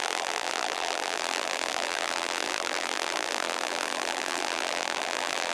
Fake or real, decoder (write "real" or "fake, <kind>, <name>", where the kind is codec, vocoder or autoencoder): fake, vocoder, BigVGAN v2